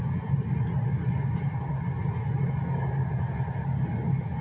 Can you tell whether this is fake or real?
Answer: real